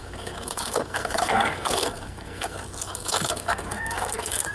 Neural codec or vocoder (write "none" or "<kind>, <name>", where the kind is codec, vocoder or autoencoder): codec, SNAC